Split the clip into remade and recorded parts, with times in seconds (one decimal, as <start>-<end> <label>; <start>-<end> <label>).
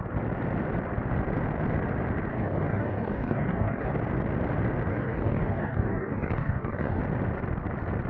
0.0-2.3 recorded; 2.3-3.9 remade; 3.9-4.9 recorded; 4.9-7.0 remade; 7.0-8.1 recorded